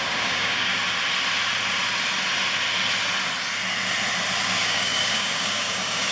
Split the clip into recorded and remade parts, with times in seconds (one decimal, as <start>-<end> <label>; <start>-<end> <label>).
0.0-0.7 remade; 0.7-4.4 recorded; 4.4-6.1 remade